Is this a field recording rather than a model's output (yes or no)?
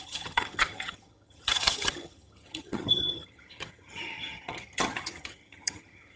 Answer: no